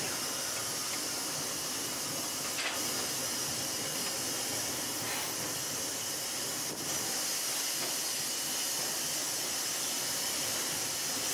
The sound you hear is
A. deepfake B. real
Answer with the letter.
B